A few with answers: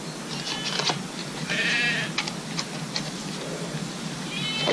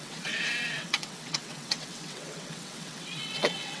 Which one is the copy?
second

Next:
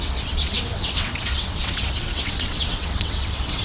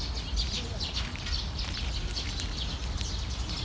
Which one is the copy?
first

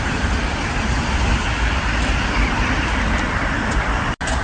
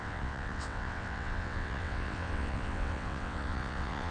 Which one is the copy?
second